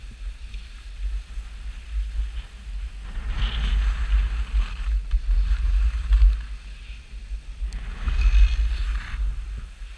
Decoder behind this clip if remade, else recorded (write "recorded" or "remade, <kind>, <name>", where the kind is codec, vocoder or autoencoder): recorded